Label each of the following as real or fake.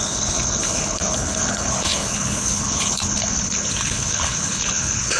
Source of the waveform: fake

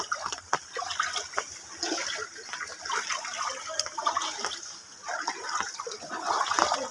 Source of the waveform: real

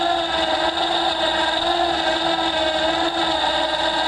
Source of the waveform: real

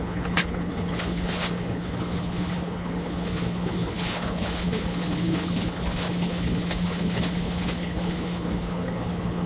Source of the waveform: fake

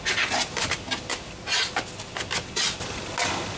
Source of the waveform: real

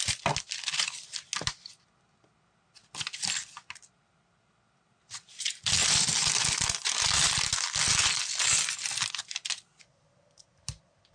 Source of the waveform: real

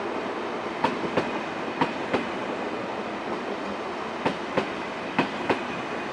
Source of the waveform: real